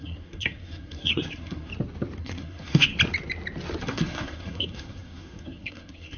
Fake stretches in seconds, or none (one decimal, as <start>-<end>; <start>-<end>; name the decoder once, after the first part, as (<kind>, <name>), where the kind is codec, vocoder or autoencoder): 0.0-1.7 (codec, SNAC); 2.2-2.9; 3.8-6.2